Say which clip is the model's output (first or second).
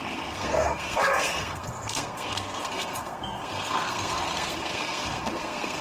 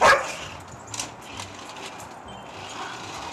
first